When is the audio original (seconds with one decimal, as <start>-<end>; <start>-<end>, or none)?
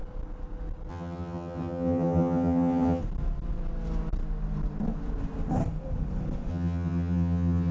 0.0-0.9; 3.0-6.5